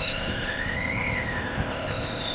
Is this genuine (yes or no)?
no